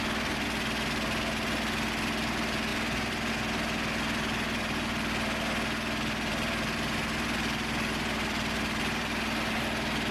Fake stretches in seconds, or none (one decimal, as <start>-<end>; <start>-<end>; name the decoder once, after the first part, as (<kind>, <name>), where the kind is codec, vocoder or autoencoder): none